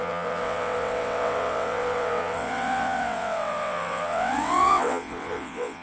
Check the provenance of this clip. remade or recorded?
remade